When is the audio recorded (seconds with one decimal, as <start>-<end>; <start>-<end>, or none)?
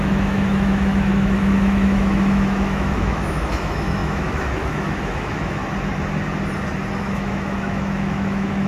5.6-7.0